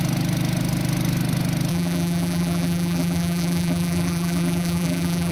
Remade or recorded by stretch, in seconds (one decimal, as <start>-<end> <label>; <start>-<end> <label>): 0.0-1.7 recorded; 1.7-5.3 remade